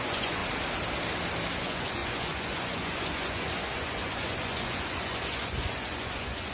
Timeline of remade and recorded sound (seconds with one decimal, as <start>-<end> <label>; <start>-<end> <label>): 0.0-0.4 remade; 0.4-1.6 recorded; 1.6-6.5 remade